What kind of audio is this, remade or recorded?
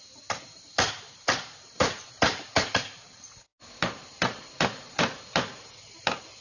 remade